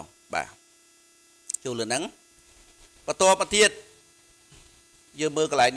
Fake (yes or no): no